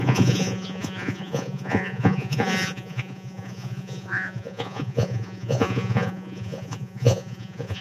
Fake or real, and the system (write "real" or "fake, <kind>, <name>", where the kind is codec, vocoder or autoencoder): fake, vocoder, Vocos